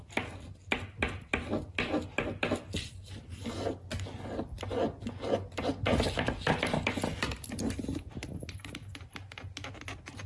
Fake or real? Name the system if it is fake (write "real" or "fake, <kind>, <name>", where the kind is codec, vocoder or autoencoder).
real